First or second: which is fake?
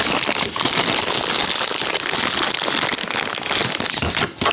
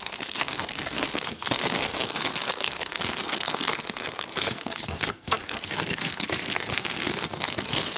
second